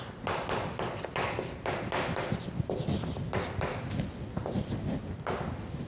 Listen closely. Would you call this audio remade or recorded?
recorded